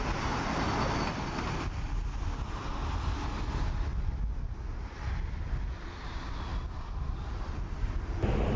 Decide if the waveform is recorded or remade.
recorded